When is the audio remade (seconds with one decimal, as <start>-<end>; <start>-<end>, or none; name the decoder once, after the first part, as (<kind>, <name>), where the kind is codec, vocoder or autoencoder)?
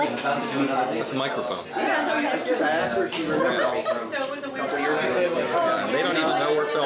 none